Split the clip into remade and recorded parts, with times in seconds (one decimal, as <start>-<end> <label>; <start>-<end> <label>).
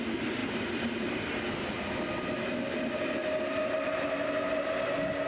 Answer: 0.0-5.3 recorded